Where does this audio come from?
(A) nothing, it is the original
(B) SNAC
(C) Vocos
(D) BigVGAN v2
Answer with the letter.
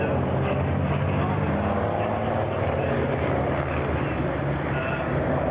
A